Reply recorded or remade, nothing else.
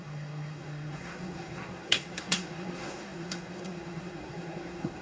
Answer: remade